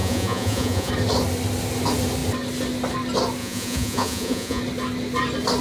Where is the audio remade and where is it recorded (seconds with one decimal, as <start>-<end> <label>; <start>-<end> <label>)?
0.0-0.9 remade; 0.9-3.4 recorded; 3.4-4.6 remade; 4.6-5.6 recorded